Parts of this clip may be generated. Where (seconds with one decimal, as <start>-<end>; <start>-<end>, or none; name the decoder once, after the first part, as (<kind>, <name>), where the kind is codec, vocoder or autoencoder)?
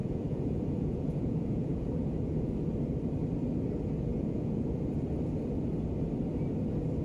0.0-2.5 (vocoder, Vocos); 4.1-4.8